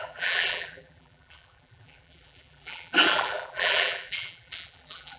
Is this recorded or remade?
remade